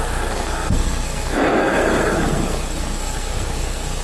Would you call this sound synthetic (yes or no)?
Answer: yes